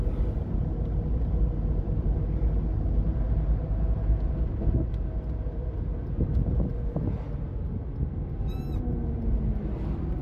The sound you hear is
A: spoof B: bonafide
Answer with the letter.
B